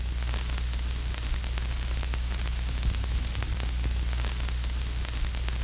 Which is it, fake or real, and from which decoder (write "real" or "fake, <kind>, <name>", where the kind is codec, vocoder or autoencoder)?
real